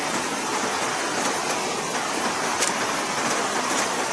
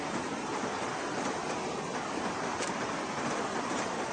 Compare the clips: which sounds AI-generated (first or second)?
second